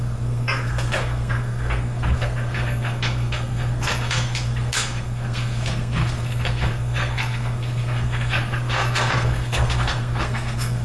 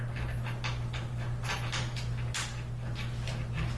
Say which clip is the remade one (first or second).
first